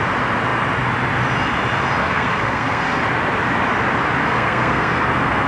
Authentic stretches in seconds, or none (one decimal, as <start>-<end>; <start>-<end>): 0.0-2.0; 3.0-4.2